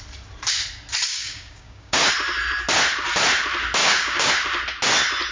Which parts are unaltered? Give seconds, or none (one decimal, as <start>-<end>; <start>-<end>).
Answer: 0.0-1.1; 2.1-3.8; 4.3-5.3